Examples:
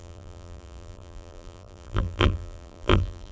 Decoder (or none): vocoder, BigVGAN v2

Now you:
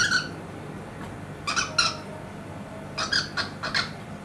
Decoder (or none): none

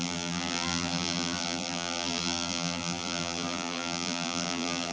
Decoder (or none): vocoder, BigVGAN v2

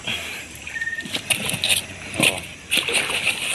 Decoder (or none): vocoder, BigVGAN v2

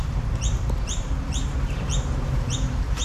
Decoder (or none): vocoder, BigVGAN v2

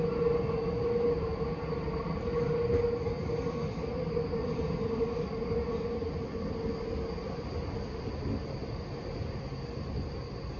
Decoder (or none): none